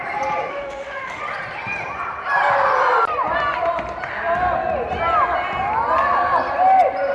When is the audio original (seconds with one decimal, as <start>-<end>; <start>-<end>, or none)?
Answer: 0.0-0.5; 1.2-7.1

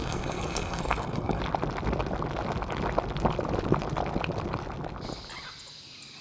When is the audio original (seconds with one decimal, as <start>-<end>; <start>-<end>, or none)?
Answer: 1.4-6.2

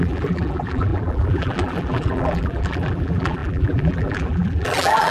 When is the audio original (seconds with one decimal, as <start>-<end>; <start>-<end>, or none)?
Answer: none

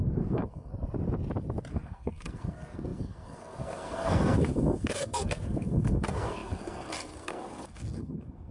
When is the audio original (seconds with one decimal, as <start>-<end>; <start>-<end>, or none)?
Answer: 0.7-1.7

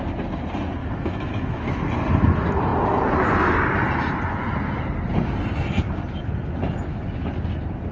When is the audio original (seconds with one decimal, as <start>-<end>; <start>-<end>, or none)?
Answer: 0.0-0.8; 1.8-7.9

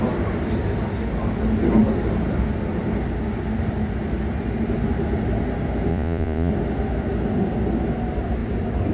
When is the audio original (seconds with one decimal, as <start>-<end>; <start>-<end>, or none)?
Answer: 0.0-5.9; 6.5-8.9

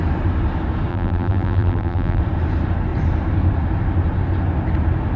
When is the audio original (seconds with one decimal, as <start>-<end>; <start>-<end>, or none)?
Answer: 0.0-0.9; 2.2-5.2

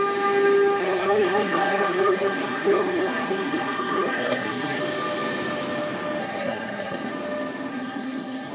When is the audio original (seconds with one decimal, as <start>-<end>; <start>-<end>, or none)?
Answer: 0.0-0.8; 4.8-6.2; 7.1-7.7